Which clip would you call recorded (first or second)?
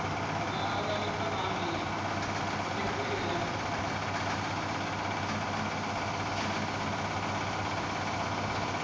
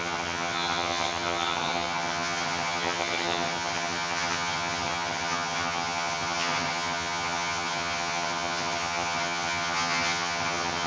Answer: first